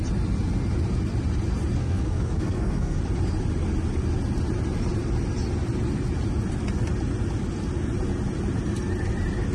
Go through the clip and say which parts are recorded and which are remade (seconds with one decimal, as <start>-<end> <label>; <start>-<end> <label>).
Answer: 0.0-1.8 recorded; 1.8-3.0 remade; 3.0-9.5 recorded